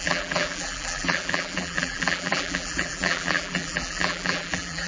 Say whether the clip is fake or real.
fake